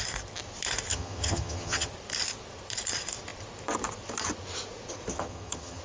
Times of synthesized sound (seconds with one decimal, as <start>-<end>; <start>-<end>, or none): 0.9-1.9; 5.1-5.8